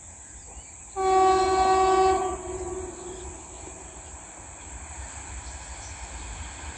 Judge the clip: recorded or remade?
recorded